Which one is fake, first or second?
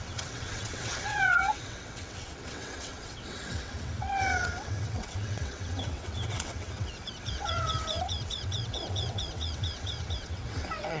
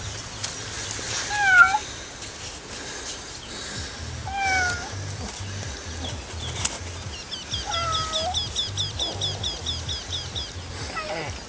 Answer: first